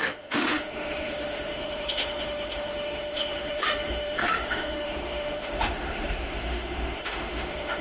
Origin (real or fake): fake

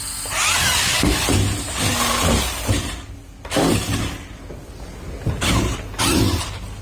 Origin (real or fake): real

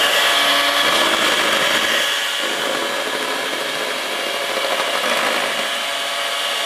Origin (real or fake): real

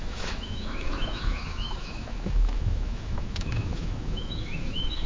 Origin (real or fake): fake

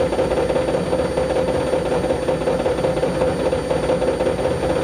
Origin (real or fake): real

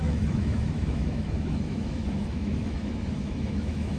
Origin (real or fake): fake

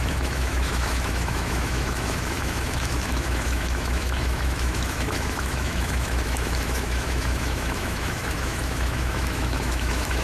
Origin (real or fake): fake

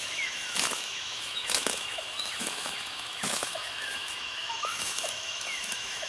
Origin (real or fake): fake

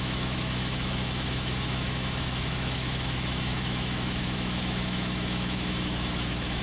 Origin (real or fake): fake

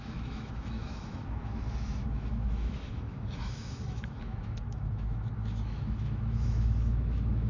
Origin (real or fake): fake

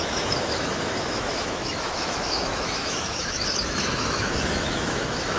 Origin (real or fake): fake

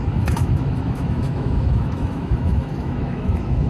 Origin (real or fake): fake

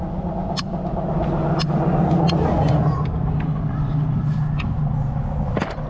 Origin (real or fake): real